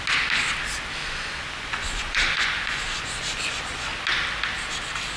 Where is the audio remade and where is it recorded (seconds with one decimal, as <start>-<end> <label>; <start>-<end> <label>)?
0.0-1.0 recorded; 1.0-3.9 remade; 3.9-5.2 recorded